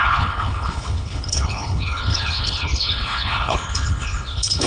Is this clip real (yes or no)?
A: no